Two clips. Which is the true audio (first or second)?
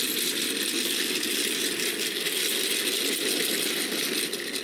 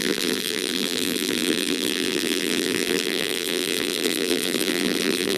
first